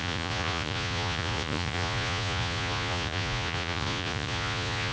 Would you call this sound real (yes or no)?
no